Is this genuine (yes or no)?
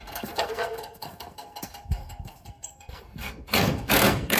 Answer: no